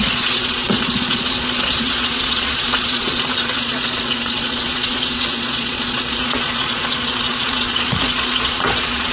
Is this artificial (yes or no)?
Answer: yes